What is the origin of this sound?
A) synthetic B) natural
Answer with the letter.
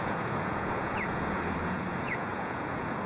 A